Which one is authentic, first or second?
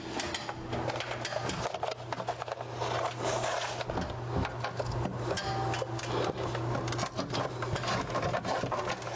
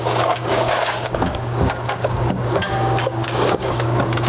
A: first